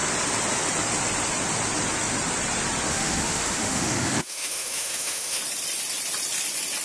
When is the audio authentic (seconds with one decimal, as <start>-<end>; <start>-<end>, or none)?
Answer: 0.0-2.9; 5.4-6.8